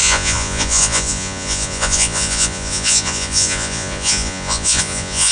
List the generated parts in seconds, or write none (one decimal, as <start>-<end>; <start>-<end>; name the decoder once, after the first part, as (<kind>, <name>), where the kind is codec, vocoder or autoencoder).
0.0-5.3 (vocoder, Vocos)